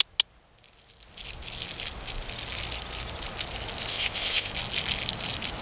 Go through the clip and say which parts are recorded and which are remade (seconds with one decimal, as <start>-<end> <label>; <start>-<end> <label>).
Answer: 0.0-3.9 recorded; 3.9-4.5 remade; 4.5-5.6 recorded